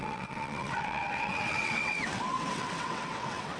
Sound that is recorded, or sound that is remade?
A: remade